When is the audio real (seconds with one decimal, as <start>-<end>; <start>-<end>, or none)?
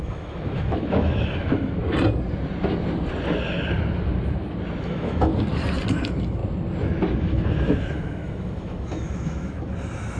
1.8-4.8; 5.3-5.9; 6.4-7.2